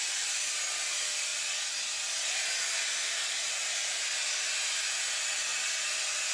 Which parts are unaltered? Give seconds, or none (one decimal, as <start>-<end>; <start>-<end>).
0.0-6.3